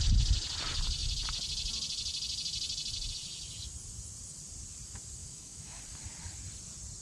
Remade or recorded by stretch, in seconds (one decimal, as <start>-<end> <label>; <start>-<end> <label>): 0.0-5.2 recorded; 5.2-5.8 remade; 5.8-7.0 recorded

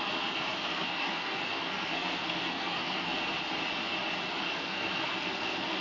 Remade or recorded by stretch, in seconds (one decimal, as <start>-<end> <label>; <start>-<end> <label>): 0.0-3.3 remade; 3.3-4.4 recorded; 4.4-5.8 remade

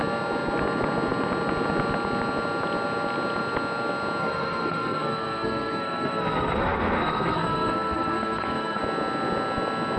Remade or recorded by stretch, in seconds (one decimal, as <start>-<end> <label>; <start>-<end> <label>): 0.0-4.2 recorded; 4.2-8.8 remade; 8.8-10.0 recorded

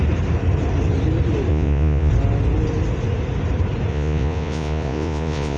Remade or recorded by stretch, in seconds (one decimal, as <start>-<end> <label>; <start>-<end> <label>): 0.0-1.5 recorded; 1.5-2.1 remade; 2.1-3.9 recorded; 3.9-5.6 remade